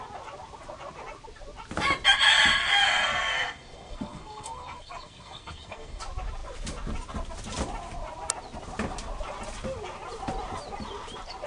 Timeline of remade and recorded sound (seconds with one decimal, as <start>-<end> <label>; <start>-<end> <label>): 0.0-2.6 recorded; 2.6-6.0 remade; 6.0-11.5 recorded

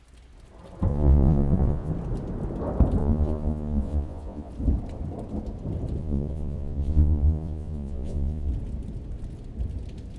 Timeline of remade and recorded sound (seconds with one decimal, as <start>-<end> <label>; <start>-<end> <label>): 0.0-0.9 recorded; 0.9-1.9 remade; 1.9-3.0 recorded; 3.0-4.5 remade; 4.5-6.0 recorded; 6.0-8.5 remade; 8.5-10.2 recorded

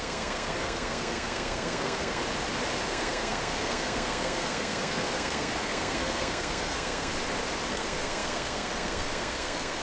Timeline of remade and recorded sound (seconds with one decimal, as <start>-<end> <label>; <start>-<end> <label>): 0.0-2.2 remade; 2.2-2.9 recorded; 2.9-7.1 remade; 7.1-7.7 recorded; 7.7-9.8 remade

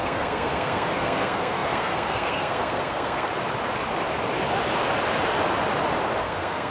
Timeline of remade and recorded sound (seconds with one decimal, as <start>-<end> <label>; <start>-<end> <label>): 0.0-3.3 remade; 3.3-6.2 recorded; 6.2-6.7 remade

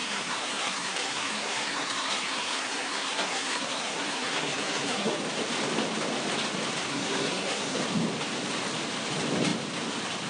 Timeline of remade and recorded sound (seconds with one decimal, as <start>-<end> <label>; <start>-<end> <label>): 0.0-5.2 remade; 5.2-6.9 recorded; 6.9-7.8 remade; 7.8-10.3 recorded